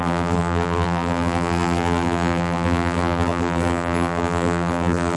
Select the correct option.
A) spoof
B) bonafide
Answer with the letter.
A